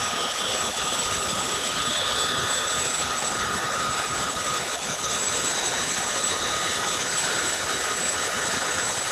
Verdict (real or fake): fake